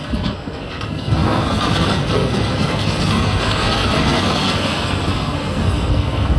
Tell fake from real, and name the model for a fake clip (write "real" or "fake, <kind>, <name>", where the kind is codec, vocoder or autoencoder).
fake, codec, SNAC